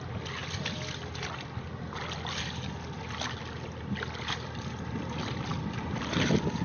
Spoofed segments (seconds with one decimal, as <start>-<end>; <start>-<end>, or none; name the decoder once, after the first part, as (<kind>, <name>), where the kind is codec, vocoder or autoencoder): none